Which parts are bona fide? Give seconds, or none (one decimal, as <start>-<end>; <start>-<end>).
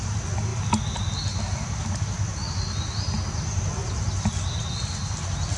0.0-5.6